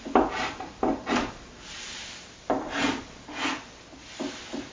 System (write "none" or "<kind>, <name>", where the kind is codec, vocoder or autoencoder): none